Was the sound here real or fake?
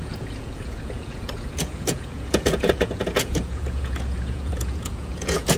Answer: fake